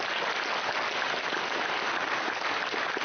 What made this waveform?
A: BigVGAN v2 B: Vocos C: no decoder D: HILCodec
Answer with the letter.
C